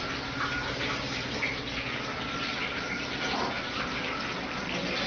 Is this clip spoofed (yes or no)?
no